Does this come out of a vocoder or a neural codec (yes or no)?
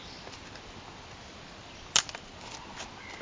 no